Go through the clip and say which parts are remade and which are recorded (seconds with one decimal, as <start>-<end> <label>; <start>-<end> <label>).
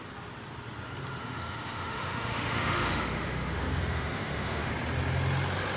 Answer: 0.0-1.2 recorded; 1.2-4.7 remade; 4.7-5.8 recorded